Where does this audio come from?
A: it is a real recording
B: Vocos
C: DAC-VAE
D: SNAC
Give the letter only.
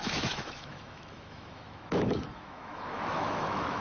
C